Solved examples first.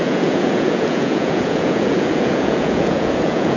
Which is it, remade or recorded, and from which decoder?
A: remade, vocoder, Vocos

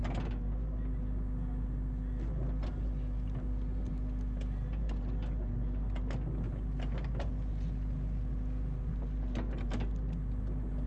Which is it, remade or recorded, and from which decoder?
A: recorded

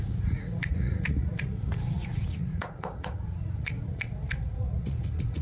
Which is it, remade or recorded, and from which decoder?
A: remade, vocoder, Vocos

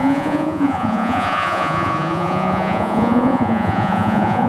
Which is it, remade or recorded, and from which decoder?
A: remade, vocoder, Vocos